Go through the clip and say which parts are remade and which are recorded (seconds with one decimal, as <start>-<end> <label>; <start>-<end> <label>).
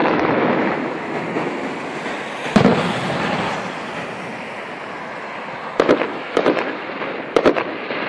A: 0.0-1.2 remade; 1.2-6.1 recorded; 6.1-6.8 remade; 6.8-8.1 recorded